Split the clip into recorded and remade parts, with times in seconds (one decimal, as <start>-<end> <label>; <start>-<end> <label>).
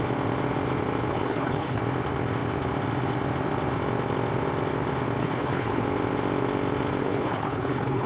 0.0-1.1 recorded; 1.1-1.8 remade; 1.8-5.2 recorded; 5.2-5.8 remade; 5.8-7.0 recorded; 7.0-8.1 remade